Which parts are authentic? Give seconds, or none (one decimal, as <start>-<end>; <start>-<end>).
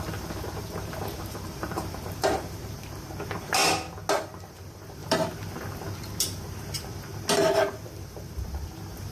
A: 3.6-4.2